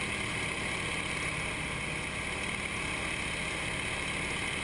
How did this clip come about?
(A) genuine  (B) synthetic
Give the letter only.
A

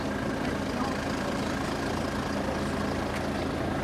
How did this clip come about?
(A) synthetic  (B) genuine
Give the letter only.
B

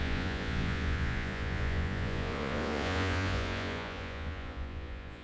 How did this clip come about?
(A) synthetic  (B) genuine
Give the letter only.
A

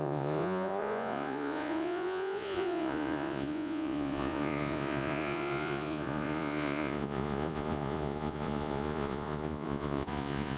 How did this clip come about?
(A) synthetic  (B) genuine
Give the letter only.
A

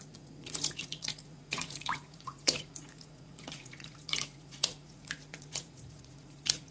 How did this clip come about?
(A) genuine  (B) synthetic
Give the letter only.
B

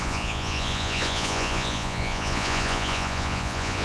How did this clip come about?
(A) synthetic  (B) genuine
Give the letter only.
A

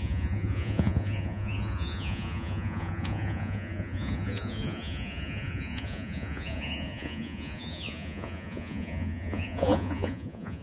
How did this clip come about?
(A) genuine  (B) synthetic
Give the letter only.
B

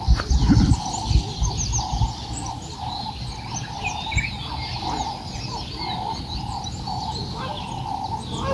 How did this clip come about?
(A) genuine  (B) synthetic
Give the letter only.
A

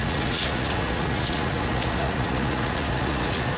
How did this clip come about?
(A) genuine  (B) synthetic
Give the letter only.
B